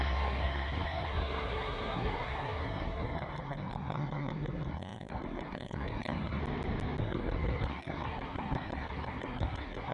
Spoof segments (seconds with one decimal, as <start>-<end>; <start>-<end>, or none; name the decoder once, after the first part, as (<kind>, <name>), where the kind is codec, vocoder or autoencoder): 0.0-6.4 (codec, SNAC); 7.0-9.9